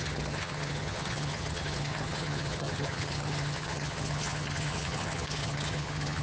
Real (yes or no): no